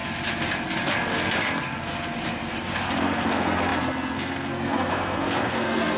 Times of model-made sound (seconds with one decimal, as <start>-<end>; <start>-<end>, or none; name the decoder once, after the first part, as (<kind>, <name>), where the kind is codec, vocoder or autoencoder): 3.0-6.0 (codec, SNAC)